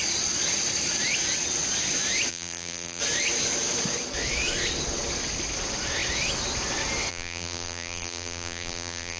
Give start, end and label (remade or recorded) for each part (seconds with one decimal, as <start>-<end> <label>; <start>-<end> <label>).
0.0-2.3 recorded; 2.3-3.0 remade; 3.0-7.1 recorded; 7.1-9.2 remade

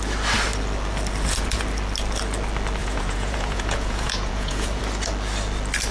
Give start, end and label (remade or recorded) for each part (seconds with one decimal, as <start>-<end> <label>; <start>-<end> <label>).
0.0-2.8 recorded; 2.8-4.8 remade; 4.8-5.9 recorded

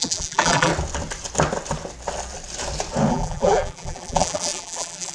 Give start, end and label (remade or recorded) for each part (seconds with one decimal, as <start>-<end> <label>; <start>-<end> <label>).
0.0-0.7 remade; 0.7-3.1 recorded; 3.1-5.1 remade

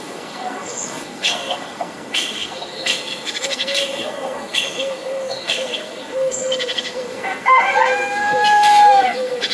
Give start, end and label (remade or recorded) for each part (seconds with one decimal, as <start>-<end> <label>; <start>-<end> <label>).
0.0-9.5 remade

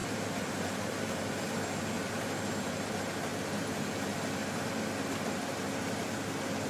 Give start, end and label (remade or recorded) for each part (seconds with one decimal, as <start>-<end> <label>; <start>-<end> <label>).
0.0-1.2 remade; 1.2-6.7 recorded

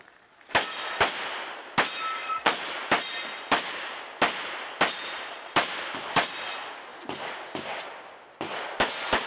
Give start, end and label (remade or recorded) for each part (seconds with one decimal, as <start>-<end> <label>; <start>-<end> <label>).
0.0-2.2 recorded; 2.2-2.7 remade; 2.7-9.3 recorded

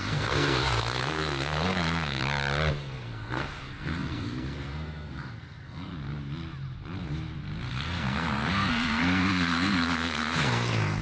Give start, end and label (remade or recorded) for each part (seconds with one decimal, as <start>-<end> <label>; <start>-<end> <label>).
0.0-2.2 remade; 2.2-2.8 recorded; 2.8-5.9 remade; 5.9-7.7 recorded; 7.7-11.0 remade

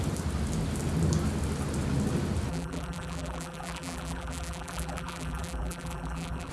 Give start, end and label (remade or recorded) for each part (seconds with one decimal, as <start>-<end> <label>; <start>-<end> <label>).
0.0-2.5 recorded; 2.5-6.5 remade